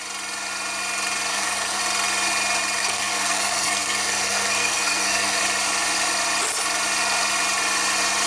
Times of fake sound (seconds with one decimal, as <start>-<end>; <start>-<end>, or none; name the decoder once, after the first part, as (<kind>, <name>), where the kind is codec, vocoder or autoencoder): 1.3-1.8 (codec, SNAC); 2.8-5.4